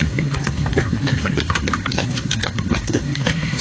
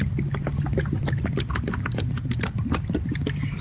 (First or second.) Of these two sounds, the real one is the second